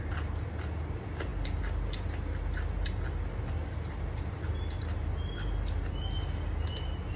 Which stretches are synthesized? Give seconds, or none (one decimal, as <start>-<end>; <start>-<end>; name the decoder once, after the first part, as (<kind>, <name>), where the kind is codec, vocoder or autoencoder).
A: none